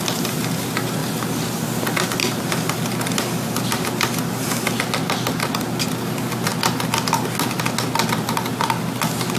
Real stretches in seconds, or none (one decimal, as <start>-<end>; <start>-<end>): 0.0-1.0; 4.8-9.4